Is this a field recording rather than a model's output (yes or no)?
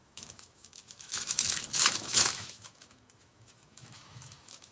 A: no